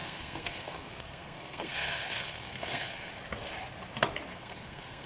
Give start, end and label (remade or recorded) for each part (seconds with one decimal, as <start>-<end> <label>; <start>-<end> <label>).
0.0-3.1 remade; 3.1-4.3 recorded; 4.3-5.1 remade

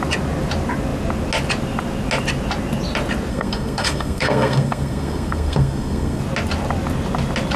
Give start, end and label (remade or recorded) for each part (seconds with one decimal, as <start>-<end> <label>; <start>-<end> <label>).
0.0-3.3 recorded; 3.3-6.2 remade; 6.2-7.6 recorded

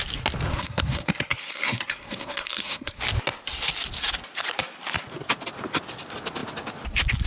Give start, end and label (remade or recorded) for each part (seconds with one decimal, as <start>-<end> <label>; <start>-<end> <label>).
0.0-0.5 recorded; 0.5-3.0 remade; 3.0-7.3 recorded